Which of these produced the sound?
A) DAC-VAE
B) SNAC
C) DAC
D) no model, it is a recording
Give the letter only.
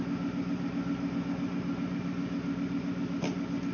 D